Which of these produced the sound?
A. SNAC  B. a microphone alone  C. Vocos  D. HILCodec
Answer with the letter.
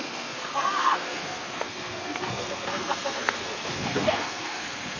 A